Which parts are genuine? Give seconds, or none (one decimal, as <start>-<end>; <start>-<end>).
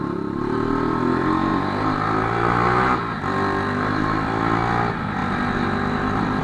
0.0-6.4